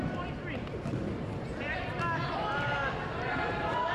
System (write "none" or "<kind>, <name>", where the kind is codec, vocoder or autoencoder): none